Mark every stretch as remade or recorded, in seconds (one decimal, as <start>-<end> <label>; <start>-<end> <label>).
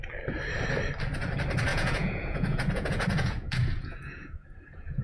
0.0-1.7 recorded; 1.7-5.0 remade